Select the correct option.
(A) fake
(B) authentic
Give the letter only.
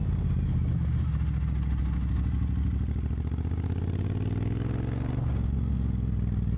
B